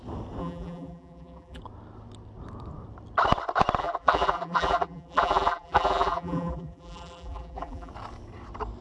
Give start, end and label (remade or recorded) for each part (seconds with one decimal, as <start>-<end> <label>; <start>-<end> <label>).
0.0-0.4 recorded; 0.4-1.6 remade; 1.6-3.8 recorded; 3.8-7.9 remade; 7.9-8.8 recorded